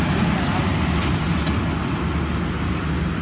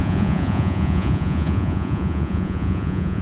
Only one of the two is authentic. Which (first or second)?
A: first